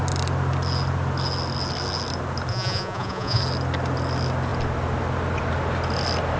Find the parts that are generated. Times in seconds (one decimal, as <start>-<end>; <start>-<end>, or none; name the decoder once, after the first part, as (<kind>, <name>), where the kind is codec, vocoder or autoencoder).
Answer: 2.5-3.4 (vocoder, Vocos)